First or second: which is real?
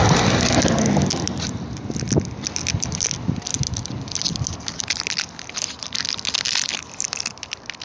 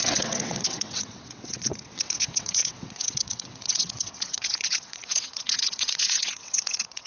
first